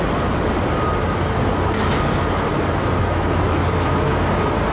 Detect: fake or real real